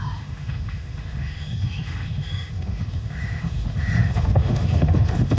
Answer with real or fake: fake